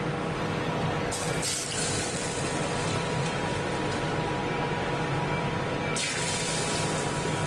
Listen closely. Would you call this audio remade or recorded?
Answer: recorded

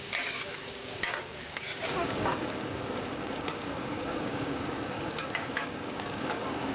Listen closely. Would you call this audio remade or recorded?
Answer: remade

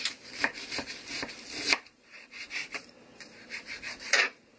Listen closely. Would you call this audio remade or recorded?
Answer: remade